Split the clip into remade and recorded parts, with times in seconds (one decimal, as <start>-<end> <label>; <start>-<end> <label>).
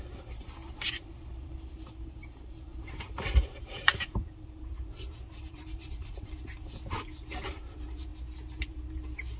0.0-8.1 remade; 8.1-8.6 recorded; 8.6-9.4 remade